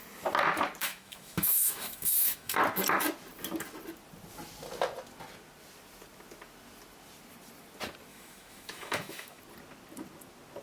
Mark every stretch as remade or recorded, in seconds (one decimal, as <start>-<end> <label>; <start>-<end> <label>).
0.0-0.8 recorded; 0.8-2.6 remade; 2.6-8.1 recorded; 8.1-9.4 remade; 9.4-10.6 recorded